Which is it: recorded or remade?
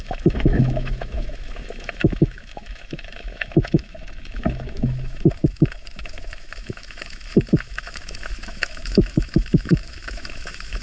remade